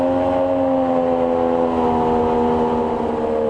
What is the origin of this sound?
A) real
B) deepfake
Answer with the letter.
A